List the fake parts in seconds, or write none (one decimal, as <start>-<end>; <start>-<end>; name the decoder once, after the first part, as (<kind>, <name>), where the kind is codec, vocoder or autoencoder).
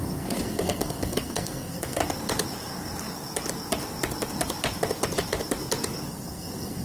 0.0-2.0 (codec, SNAC); 6.1-6.8